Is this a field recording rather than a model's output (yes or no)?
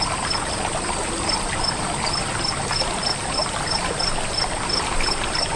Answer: yes